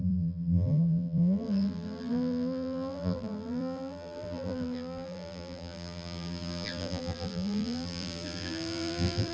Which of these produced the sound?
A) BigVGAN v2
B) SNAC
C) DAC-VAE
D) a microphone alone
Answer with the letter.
A